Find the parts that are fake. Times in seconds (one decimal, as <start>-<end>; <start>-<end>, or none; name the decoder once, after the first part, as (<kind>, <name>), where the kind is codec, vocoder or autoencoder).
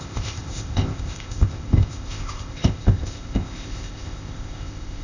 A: 0.0-5.0 (codec, ZipCodec)